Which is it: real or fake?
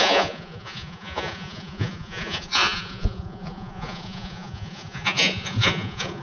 fake